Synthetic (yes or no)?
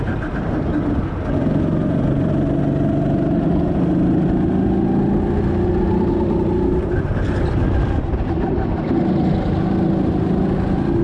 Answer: no